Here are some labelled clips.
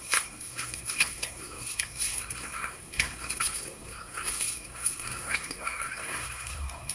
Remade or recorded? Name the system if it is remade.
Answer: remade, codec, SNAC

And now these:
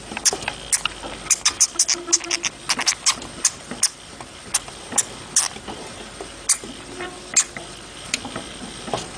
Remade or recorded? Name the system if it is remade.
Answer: recorded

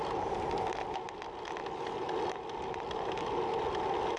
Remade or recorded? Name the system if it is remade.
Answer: recorded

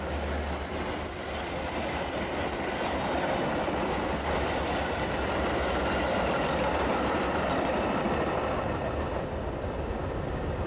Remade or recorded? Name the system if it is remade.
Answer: recorded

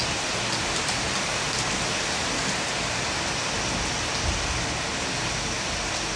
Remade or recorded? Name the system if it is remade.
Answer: recorded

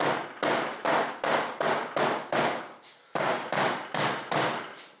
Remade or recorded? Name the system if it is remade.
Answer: recorded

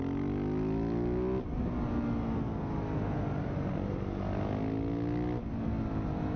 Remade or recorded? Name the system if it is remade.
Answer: recorded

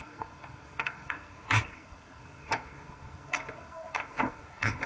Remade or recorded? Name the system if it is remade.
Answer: remade, codec, SNAC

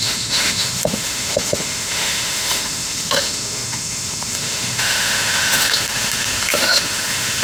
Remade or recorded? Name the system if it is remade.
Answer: remade, autoencoder, DAC-VAE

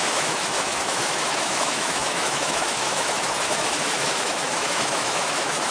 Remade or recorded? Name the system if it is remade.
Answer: remade, autoencoder, DAC-VAE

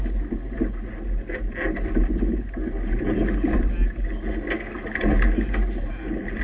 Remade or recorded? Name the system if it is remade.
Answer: recorded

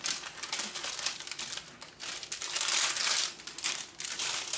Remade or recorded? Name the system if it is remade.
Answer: recorded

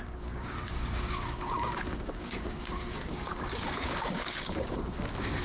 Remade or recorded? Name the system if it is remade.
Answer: remade, codec, DAC